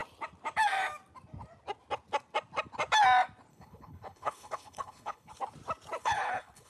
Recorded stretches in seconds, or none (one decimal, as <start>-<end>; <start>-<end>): 0.0-3.5; 5.4-6.0